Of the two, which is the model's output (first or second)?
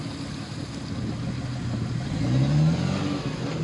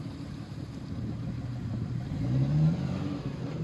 second